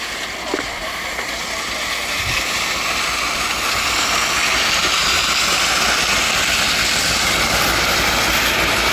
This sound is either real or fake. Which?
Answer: real